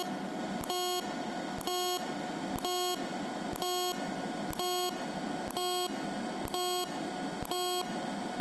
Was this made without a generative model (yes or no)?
yes